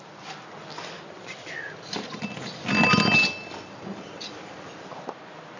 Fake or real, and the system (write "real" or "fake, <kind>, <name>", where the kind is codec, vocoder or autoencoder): real